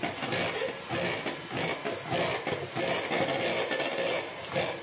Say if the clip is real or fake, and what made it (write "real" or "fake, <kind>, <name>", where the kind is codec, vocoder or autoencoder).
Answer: real